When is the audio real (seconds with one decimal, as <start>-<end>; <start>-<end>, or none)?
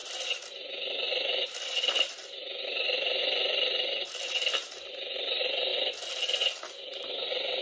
0.5-4.0; 4.9-7.6